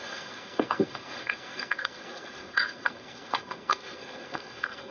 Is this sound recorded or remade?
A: remade